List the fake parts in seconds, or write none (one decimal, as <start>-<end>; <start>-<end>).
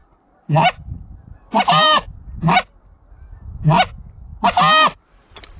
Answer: 0.0-2.4